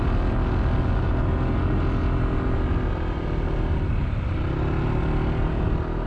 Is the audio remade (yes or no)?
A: no